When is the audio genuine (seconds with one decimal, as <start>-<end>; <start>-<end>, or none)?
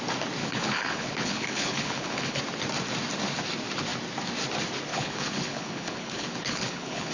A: 0.0-0.4; 2.4-4.9